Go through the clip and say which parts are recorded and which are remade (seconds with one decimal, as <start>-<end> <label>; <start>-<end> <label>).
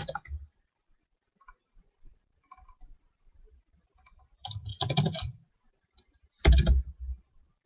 0.0-7.7 recorded